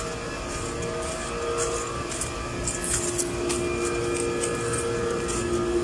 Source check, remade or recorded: recorded